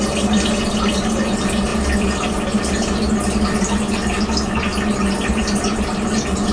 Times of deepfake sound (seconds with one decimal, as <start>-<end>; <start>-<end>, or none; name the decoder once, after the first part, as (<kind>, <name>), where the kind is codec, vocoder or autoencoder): none